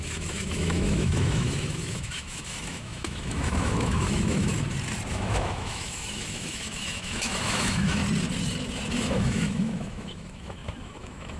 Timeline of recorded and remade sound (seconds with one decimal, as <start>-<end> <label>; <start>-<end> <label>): 0.0-4.5 remade; 4.5-5.1 recorded; 5.1-8.0 remade; 8.0-8.9 recorded; 8.9-11.4 remade